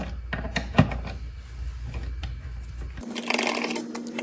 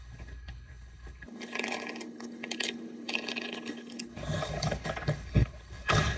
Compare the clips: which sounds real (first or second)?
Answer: first